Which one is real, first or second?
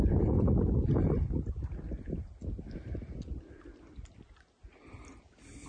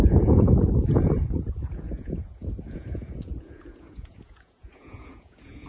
first